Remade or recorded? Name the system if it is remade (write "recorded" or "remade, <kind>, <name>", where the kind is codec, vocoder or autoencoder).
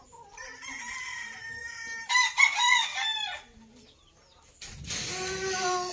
recorded